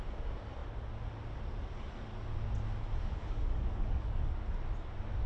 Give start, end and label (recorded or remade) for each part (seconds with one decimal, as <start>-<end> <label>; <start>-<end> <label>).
0.0-3.0 recorded; 3.0-4.3 remade; 4.3-5.3 recorded